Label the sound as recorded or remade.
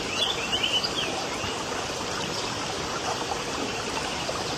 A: remade